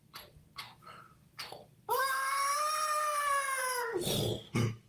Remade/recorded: recorded